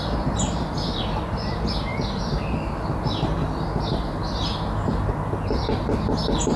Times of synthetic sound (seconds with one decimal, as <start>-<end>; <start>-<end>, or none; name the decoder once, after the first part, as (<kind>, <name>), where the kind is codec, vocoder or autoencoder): none